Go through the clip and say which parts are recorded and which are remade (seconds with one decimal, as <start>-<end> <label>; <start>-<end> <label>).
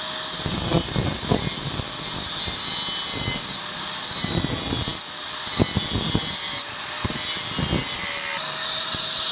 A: 0.0-9.3 recorded